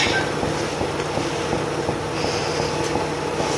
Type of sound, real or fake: real